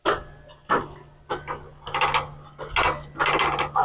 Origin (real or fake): real